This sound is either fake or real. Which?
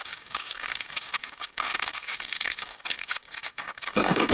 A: fake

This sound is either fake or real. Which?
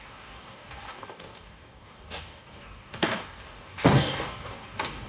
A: fake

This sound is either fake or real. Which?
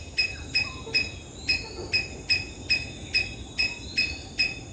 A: real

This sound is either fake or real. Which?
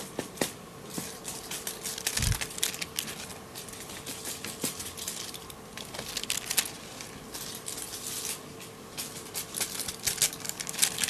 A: real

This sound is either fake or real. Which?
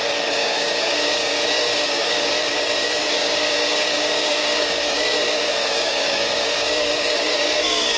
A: fake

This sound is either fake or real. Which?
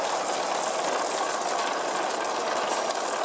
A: real